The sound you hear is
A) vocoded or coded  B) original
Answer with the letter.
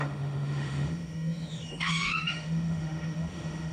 A